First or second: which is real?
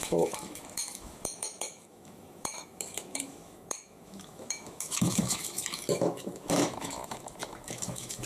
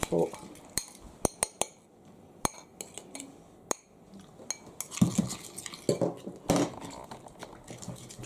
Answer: second